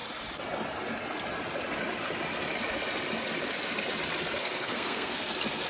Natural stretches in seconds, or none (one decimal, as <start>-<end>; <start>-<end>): 0.0-4.4; 5.3-5.7